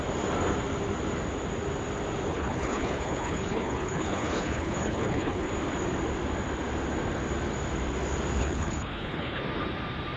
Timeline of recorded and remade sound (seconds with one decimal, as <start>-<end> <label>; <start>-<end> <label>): 0.0-2.3 recorded; 2.3-5.5 remade; 5.5-8.4 recorded; 8.4-9.4 remade; 9.4-10.2 recorded